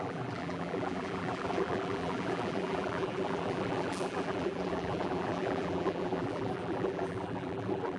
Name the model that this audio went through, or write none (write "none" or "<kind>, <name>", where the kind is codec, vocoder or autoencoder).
vocoder, BigVGAN v2